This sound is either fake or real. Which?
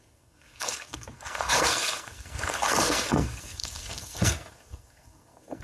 fake